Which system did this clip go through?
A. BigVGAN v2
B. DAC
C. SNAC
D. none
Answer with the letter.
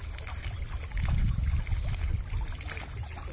D